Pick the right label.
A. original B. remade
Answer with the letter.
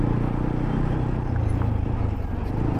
A